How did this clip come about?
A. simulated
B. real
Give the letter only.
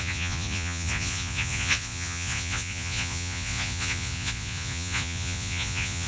A